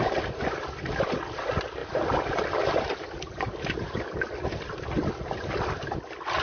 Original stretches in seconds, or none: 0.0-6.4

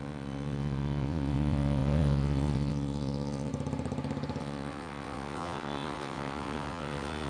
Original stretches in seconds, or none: 3.5-4.4

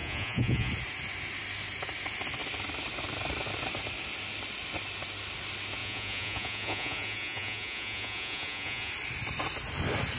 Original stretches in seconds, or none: 0.7-5.8; 8.9-10.2

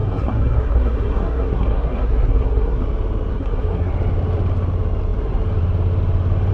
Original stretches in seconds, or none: 2.8-3.3; 3.9-6.5

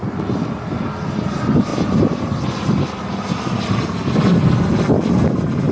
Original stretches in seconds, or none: 0.0-5.7